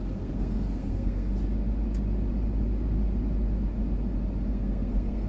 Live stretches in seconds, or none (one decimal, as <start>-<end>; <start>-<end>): 1.3-4.5